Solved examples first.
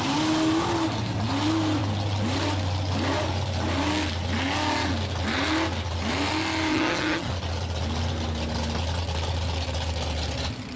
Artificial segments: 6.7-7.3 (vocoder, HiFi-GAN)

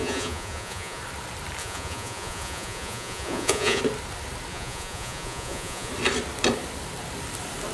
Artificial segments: 0.0-1.0 (vocoder, Vocos); 1.6-3.8; 4.5-5.9

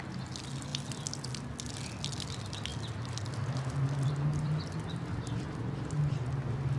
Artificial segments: 2.7-5.6 (vocoder, BigVGAN v2)

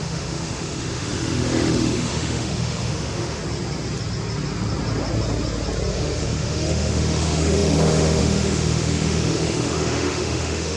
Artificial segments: 0.0-3.4 (autoencoder, DAC-VAE); 5.9-10.8